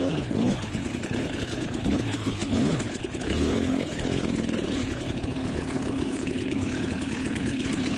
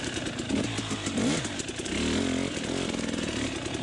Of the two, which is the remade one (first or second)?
first